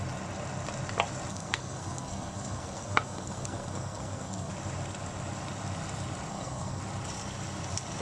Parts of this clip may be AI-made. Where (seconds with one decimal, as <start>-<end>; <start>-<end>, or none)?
1.3-4.5; 6.3-6.8